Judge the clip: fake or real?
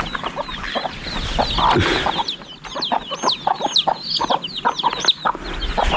real